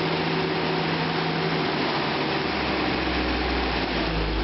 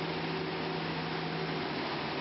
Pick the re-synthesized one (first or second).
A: first